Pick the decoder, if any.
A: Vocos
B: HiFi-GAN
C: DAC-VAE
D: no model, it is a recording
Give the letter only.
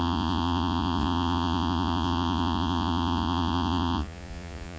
A